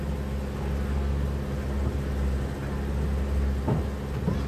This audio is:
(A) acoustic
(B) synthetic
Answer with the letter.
A